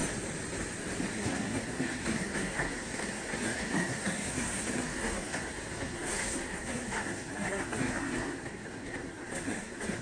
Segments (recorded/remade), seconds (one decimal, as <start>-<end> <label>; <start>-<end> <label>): 0.0-1.1 recorded; 1.1-10.0 remade